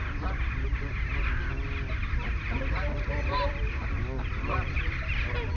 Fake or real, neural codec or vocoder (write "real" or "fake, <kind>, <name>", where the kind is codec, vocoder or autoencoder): real